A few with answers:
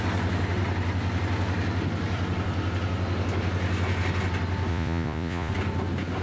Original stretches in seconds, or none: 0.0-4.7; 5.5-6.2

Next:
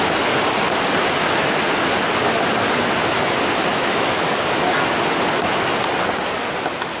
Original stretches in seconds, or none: 0.0-3.7; 4.3-7.0

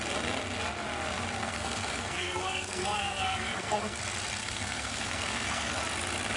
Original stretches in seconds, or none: 0.0-1.4; 4.0-4.4; 5.8-6.4

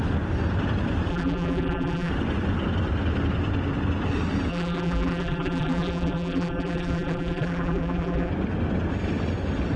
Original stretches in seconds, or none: 0.0-1.1; 2.1-4.5; 8.3-9.8